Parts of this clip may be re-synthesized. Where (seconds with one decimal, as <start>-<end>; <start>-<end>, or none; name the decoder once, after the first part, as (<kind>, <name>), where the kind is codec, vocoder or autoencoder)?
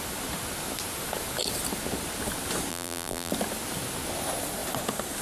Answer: 2.7-3.3 (vocoder, BigVGAN v2)